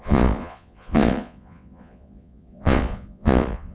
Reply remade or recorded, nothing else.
remade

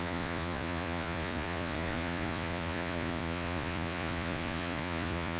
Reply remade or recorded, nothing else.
remade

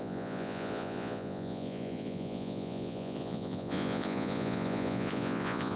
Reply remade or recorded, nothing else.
remade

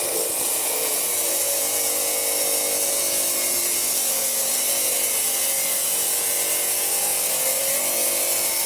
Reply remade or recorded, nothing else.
remade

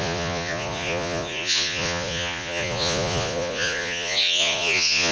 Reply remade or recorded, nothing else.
remade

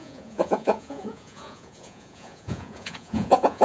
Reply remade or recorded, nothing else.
remade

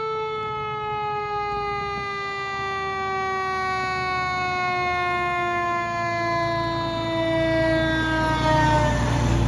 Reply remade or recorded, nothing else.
recorded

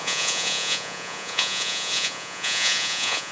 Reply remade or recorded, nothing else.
remade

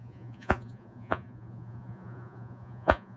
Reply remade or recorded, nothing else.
remade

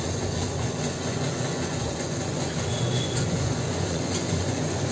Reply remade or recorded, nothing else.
remade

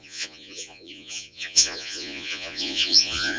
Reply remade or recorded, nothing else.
remade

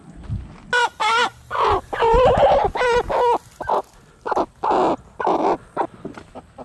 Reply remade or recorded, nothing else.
recorded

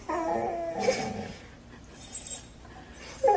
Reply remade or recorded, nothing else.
recorded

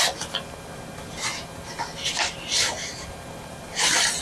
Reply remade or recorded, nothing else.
recorded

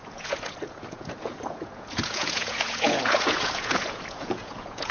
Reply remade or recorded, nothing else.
remade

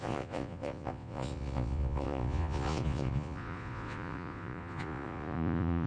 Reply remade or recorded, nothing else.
remade